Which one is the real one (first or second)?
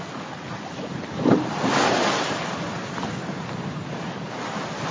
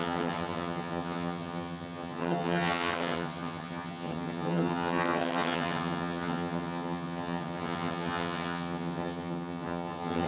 first